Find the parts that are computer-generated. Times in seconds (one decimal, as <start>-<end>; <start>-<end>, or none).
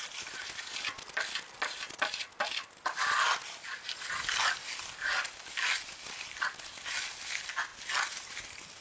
none